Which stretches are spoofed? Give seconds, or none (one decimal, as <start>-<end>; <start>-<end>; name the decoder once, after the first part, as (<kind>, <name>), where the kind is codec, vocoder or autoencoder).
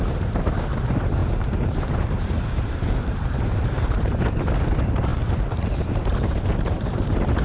1.2-4.1 (vocoder, BigVGAN v2); 5.1-7.4